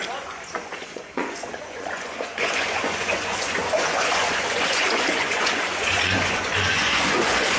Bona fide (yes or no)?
no